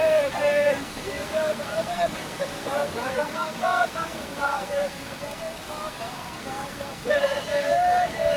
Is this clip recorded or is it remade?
remade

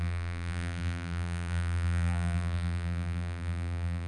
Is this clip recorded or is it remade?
remade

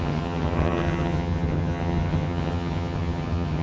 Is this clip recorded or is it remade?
remade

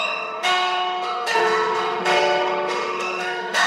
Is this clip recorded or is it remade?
remade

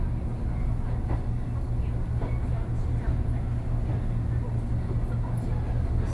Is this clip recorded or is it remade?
recorded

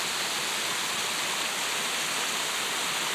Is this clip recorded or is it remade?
recorded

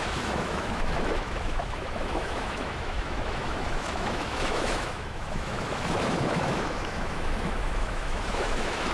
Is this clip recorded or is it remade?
remade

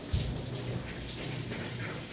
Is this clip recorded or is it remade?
recorded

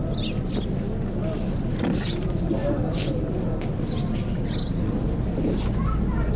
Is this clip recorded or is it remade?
recorded